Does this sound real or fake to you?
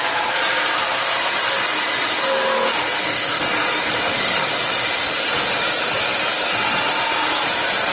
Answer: real